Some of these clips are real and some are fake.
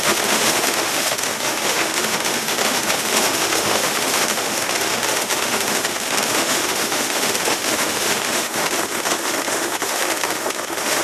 fake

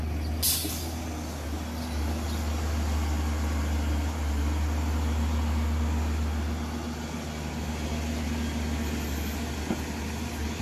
real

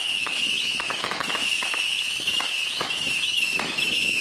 fake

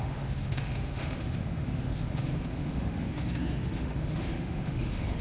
fake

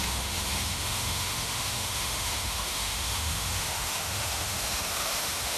fake